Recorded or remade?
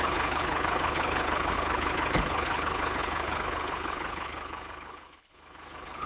remade